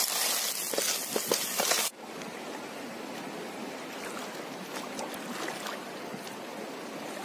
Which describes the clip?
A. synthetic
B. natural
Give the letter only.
B